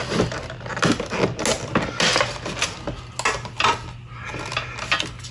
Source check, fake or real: real